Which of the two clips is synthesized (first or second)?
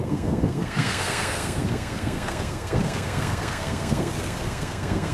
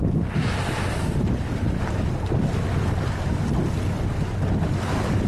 first